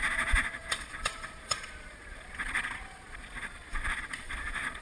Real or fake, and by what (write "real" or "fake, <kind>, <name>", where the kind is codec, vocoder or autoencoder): fake, vocoder, Vocos